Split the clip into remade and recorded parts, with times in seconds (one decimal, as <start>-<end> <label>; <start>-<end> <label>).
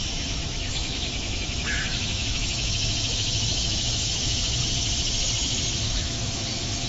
0.0-4.6 remade; 4.6-5.8 recorded; 5.8-6.9 remade